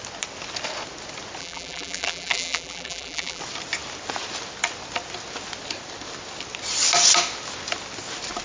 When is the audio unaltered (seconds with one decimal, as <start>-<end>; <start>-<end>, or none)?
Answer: 0.0-1.4; 3.4-8.4